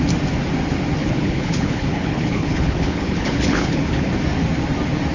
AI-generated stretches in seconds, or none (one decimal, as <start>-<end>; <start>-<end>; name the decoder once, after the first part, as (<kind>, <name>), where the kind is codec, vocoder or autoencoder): 1.0-4.1 (codec, HILCodec)